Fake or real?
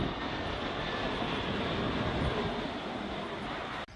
real